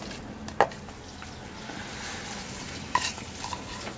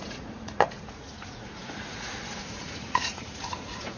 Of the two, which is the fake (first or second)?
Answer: second